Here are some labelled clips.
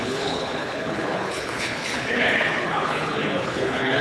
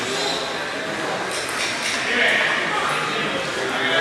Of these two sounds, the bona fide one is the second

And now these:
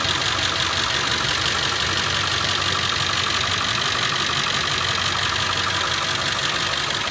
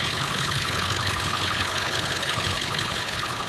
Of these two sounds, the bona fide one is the first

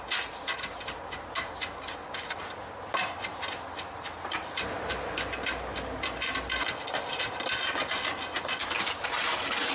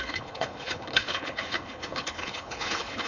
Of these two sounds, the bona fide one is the first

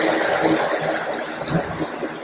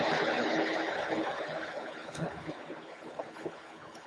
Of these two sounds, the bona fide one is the first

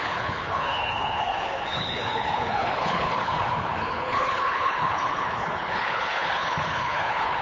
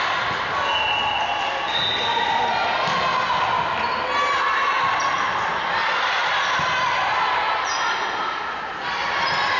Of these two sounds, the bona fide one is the second